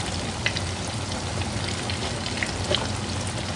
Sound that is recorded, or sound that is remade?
recorded